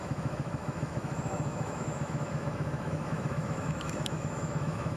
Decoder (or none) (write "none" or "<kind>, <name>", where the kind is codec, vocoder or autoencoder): autoencoder, DAC-VAE